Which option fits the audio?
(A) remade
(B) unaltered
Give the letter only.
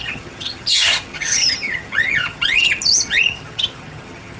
A